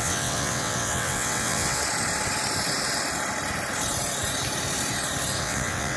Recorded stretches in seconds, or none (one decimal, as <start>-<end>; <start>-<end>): 1.8-5.4